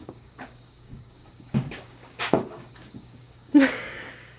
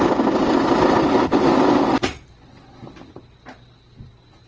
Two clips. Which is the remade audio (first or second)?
first